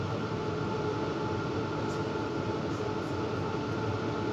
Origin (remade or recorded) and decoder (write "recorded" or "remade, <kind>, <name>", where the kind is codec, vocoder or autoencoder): recorded